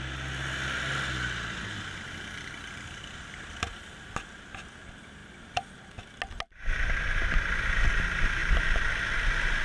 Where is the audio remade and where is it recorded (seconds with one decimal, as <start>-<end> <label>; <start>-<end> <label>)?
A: 0.0-8.4 recorded; 8.4-9.2 remade; 9.2-9.6 recorded